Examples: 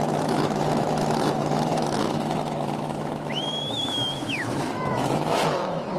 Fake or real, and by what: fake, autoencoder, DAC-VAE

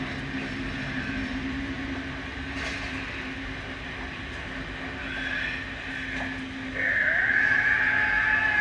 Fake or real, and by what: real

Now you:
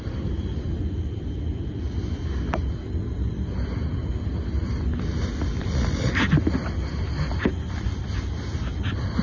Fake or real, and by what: real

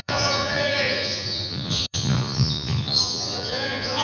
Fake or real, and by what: fake, vocoder, Vocos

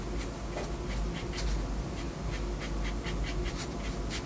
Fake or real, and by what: real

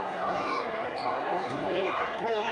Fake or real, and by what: fake, codec, SNAC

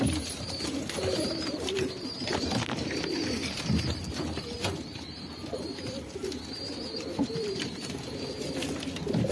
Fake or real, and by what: fake, vocoder, BigVGAN v2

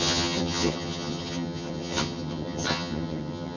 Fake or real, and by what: fake, vocoder, HiFi-GAN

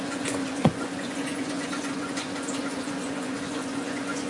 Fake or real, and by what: fake, vocoder, Vocos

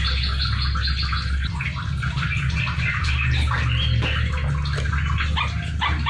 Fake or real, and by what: real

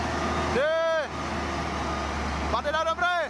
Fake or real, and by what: real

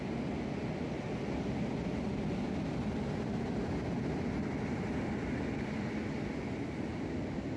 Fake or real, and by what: real